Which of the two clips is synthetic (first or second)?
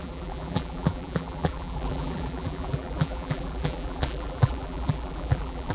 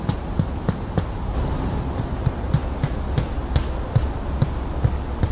first